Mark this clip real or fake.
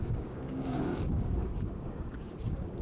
fake